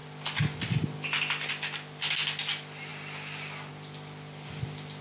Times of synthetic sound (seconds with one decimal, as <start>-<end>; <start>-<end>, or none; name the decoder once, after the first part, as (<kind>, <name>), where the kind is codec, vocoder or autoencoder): none